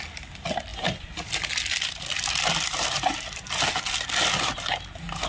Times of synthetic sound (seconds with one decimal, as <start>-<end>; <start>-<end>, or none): none